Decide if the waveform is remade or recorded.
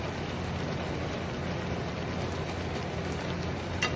recorded